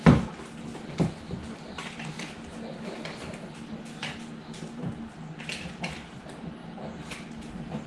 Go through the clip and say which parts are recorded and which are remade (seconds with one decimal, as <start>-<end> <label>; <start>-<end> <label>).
0.0-7.9 recorded